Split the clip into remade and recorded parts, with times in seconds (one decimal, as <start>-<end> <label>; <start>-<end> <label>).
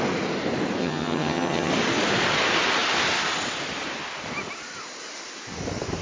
0.0-0.8 recorded; 0.8-1.7 remade; 1.7-6.0 recorded